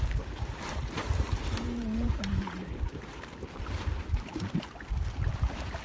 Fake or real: fake